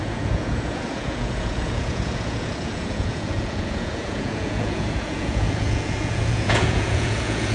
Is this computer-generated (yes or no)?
yes